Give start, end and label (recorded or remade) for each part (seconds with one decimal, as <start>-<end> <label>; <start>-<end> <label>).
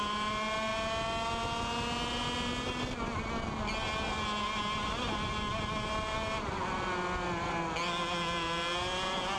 0.0-9.4 recorded